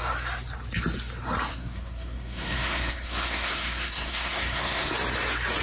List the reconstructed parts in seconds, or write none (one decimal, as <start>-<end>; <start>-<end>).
1.5-4.9